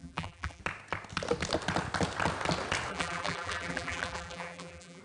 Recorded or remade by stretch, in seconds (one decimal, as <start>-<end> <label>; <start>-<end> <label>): 0.0-0.6 remade; 0.6-2.9 recorded; 2.9-5.0 remade

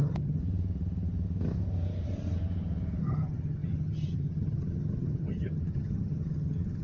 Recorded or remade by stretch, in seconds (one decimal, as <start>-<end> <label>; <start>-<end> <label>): 0.0-0.4 remade; 0.4-3.0 recorded; 3.0-6.8 remade

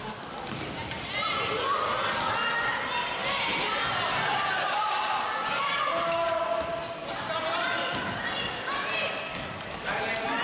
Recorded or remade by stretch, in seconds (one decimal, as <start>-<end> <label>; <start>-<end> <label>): 0.0-5.7 recorded; 5.7-6.4 remade; 6.4-9.3 recorded; 9.3-10.0 remade; 10.0-10.4 recorded

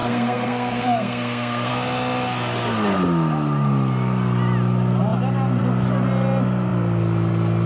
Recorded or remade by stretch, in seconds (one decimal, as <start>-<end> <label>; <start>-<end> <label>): 0.0-1.7 remade; 1.7-7.7 recorded

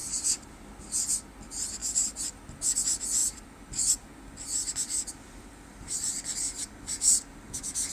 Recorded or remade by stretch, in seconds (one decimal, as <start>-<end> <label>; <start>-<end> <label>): 0.0-1.1 remade; 1.1-1.8 recorded; 1.8-2.4 remade; 2.4-7.9 recorded

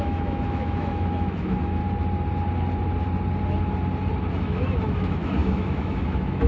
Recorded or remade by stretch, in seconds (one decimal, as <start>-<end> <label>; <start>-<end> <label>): 0.0-1.8 remade; 1.8-4.4 recorded; 4.4-6.5 remade